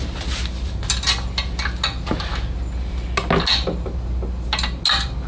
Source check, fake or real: real